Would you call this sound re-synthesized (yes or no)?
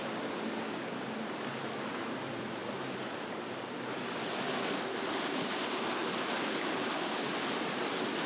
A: no